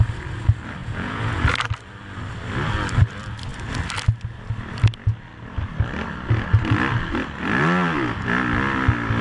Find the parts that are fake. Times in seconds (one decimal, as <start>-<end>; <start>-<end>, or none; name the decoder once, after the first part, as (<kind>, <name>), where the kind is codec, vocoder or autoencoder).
0.8-1.4 (vocoder, Vocos)